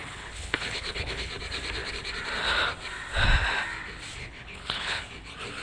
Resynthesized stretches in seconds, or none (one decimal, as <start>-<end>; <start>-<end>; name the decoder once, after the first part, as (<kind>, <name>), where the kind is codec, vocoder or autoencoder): 0.0-1.3 (codec, HILCodec); 4.2-5.0